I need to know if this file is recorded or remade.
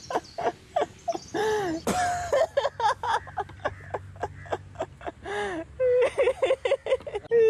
recorded